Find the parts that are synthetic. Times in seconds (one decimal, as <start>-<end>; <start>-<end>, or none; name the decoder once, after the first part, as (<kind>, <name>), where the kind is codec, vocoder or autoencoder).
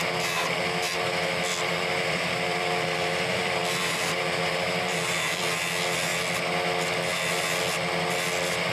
1.5-5.4 (vocoder, BigVGAN v2)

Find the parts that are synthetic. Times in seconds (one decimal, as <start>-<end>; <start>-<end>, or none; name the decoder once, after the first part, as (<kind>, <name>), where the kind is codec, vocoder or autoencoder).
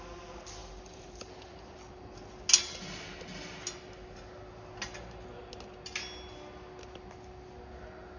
0.6-1.9 (vocoder, BigVGAN v2)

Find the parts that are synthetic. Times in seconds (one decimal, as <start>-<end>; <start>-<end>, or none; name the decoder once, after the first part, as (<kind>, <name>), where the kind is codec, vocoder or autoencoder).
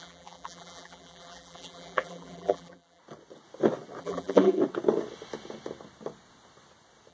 0.0-3.0 (vocoder, BigVGAN v2); 4.0-4.6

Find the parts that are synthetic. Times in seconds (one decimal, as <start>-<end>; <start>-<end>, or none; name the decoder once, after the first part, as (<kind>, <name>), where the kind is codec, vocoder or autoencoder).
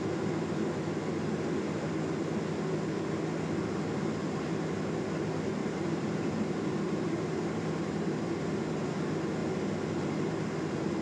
5.6-8.3 (vocoder, BigVGAN v2)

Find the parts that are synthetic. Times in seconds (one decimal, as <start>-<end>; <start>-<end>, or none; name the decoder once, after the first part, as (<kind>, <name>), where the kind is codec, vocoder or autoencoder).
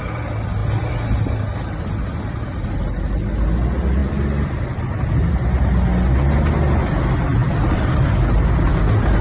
4.0-4.8 (vocoder, BigVGAN v2); 7.4-8.1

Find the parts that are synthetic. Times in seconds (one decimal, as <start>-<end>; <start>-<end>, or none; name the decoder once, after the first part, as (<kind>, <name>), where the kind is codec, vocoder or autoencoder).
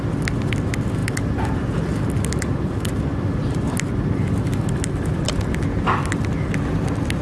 1.0-5.3 (vocoder, BigVGAN v2)